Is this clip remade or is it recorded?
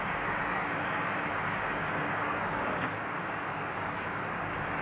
remade